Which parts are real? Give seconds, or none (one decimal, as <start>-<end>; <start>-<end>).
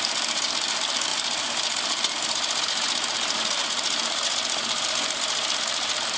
0.0-6.2